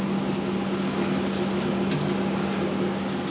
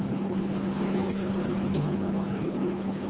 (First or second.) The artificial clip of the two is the second